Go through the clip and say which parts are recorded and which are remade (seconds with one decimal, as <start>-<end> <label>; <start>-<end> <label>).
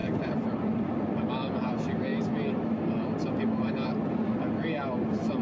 0.0-1.2 remade; 1.2-5.4 recorded